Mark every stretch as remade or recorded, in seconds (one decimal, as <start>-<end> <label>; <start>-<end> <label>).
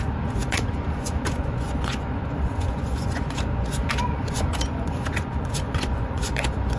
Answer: 0.0-6.8 remade